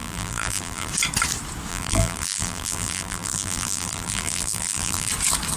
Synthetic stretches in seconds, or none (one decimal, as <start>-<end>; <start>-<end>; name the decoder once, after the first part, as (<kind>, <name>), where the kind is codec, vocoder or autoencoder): 0.0-0.9 (vocoder, BigVGAN v2); 1.7-5.1